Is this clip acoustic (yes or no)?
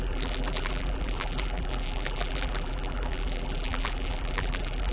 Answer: no